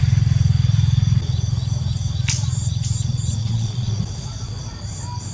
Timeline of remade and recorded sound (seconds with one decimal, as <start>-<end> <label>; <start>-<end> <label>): 0.0-3.4 recorded; 3.4-4.0 remade; 4.0-5.3 recorded